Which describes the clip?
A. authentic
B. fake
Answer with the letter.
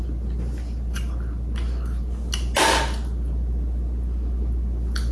A